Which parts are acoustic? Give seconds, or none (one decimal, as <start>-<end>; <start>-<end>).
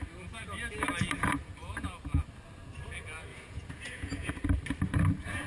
0.0-3.3; 4.3-5.5